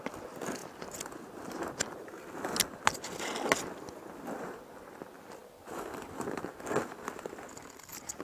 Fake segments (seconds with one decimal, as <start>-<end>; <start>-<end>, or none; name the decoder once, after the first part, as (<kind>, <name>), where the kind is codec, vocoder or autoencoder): none

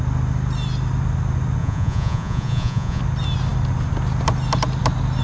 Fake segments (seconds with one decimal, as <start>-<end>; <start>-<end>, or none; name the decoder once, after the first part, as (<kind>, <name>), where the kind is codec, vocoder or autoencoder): 1.6-3.0 (vocoder, Vocos)

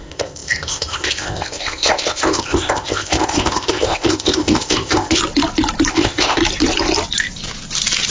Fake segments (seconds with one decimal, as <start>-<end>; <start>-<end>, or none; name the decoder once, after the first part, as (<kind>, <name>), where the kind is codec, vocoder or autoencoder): 0.0-5.2 (codec, ZipCodec); 5.9-6.4

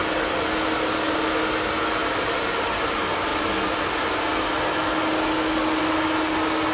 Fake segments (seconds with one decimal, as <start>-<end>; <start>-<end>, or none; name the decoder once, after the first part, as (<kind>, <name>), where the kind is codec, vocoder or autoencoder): none

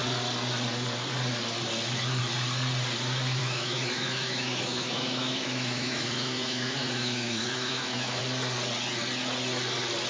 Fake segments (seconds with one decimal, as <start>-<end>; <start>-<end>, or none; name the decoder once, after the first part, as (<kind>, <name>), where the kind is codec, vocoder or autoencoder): 3.4-8.2 (autoencoder, DAC-VAE)

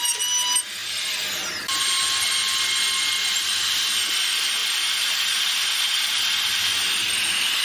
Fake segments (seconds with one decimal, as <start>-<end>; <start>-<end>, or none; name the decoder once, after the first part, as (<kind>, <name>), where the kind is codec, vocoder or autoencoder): none

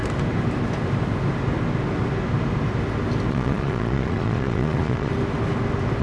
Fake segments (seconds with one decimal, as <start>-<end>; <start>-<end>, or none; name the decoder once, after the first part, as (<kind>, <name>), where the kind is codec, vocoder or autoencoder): 3.3-5.1 (vocoder, Vocos)